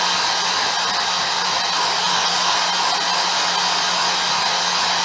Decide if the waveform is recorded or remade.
recorded